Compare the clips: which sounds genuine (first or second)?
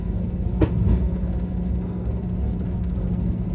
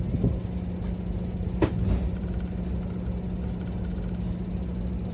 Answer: second